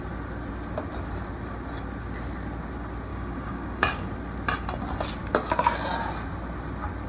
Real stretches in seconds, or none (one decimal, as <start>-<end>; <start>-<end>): 0.0-3.1; 4.1-7.1